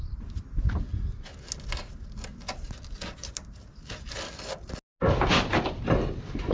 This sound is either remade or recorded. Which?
recorded